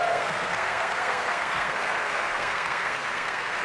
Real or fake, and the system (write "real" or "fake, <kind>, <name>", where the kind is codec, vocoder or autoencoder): fake, codec, SNAC